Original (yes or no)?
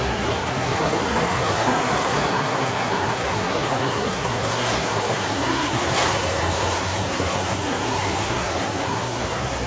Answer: no